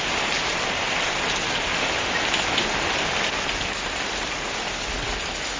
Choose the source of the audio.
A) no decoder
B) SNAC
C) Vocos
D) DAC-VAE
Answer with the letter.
A